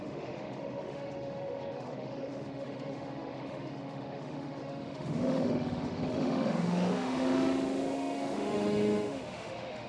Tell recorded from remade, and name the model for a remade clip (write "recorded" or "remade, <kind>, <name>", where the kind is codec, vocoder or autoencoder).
remade, autoencoder, DAC-VAE